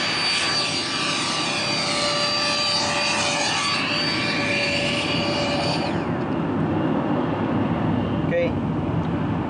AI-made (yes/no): no